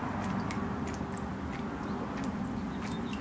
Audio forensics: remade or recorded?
recorded